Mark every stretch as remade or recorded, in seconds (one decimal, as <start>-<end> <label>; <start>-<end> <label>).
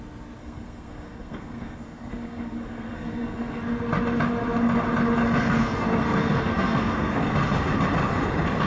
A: 0.0-0.4 recorded; 0.4-3.6 remade; 3.6-5.2 recorded; 5.2-7.2 remade; 7.2-8.7 recorded